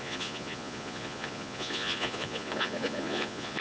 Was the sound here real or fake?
fake